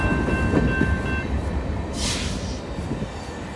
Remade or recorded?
recorded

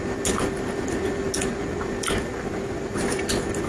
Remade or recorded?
recorded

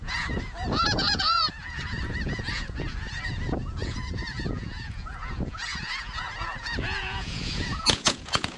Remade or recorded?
remade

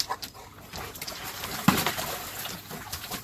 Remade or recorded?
recorded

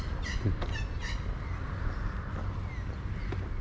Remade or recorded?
recorded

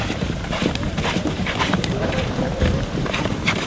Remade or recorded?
remade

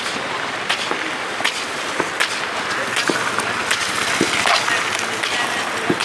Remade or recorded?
remade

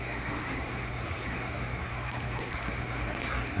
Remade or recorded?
remade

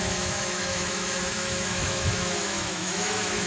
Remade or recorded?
remade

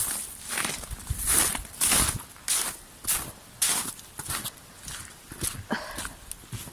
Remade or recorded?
recorded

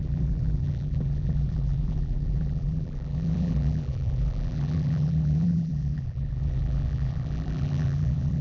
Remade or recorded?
remade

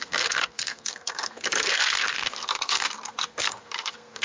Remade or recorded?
remade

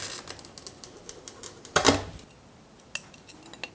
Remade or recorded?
recorded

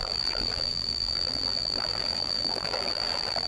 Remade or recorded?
remade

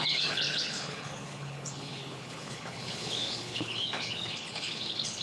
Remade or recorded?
remade